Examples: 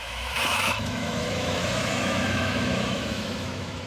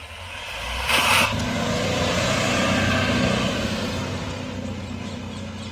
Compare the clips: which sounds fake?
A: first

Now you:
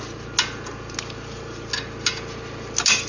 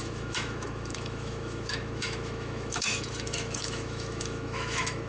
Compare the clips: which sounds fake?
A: second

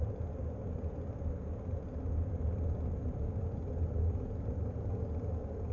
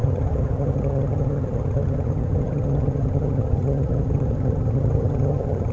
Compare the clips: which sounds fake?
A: second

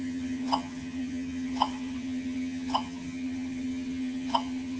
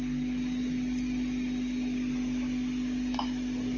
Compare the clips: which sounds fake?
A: first